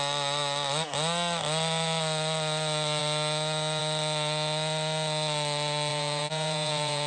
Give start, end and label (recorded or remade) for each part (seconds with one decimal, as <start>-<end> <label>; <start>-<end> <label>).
0.0-5.9 recorded; 5.9-7.1 remade